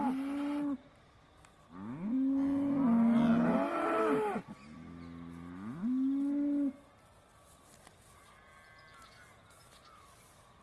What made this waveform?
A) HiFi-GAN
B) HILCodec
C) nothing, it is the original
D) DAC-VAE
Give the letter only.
C